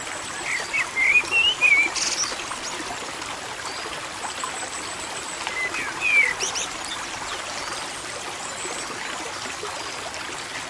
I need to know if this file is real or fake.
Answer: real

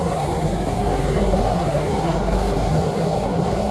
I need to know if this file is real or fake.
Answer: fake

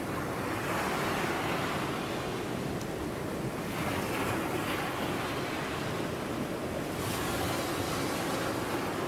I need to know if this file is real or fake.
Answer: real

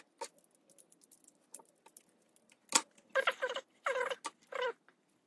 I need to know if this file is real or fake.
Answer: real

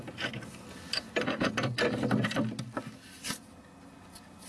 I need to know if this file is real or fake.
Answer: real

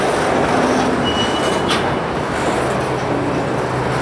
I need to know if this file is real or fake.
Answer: real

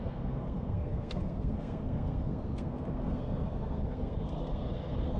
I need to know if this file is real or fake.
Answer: fake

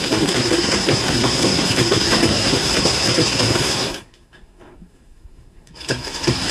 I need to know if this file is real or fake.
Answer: fake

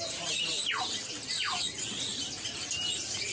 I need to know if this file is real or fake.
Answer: real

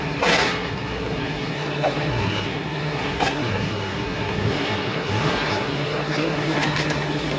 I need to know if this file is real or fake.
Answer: fake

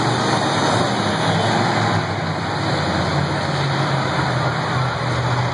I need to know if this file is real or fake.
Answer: real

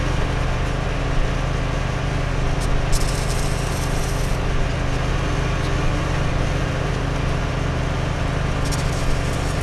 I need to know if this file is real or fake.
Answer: real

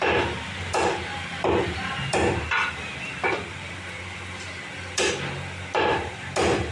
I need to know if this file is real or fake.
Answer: real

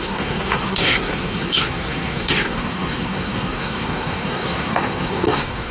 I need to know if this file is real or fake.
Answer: fake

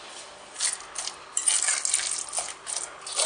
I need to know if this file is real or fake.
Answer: real